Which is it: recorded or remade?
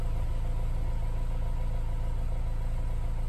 recorded